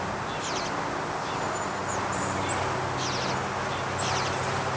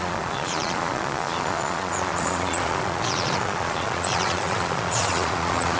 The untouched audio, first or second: first